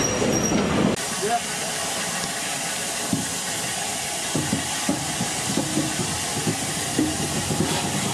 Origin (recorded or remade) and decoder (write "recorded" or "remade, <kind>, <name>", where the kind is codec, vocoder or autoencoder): recorded